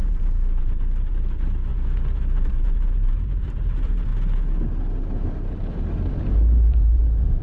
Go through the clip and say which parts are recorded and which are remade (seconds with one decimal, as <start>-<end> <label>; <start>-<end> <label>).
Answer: 0.0-4.1 remade; 4.1-6.7 recorded; 6.7-7.4 remade